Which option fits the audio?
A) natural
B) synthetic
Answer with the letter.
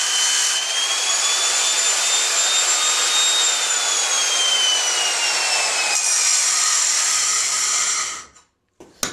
A